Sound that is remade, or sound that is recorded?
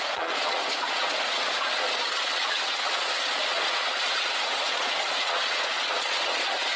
remade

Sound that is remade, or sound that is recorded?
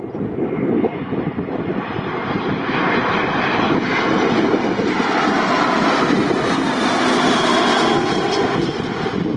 recorded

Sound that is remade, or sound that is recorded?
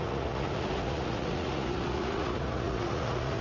remade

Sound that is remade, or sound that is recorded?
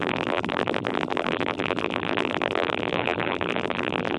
remade